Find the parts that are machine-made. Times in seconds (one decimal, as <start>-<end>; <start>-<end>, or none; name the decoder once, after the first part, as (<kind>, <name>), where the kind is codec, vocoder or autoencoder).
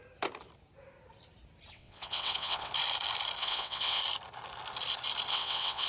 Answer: 1.7-2.7 (vocoder, WaveNeXt); 3.4-4.0; 5.3-5.9